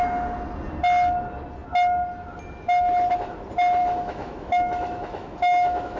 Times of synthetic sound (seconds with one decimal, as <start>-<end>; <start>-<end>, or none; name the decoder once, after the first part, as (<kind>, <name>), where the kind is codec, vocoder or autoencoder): 3.8-6.0 (autoencoder, DAC-VAE)